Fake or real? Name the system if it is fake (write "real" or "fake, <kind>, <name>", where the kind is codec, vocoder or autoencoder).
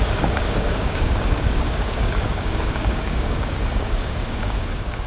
fake, codec, DAC